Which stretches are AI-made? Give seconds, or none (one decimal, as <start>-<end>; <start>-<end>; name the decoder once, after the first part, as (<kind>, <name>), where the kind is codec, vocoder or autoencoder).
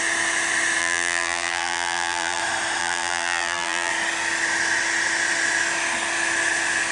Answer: 0.8-2.4 (vocoder, BigVGAN v2); 2.8-3.9